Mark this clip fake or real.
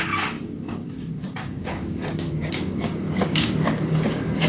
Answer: fake